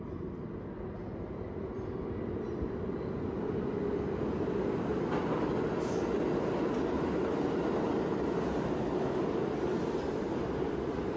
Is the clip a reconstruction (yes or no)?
no